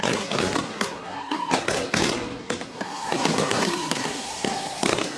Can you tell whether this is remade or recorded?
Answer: remade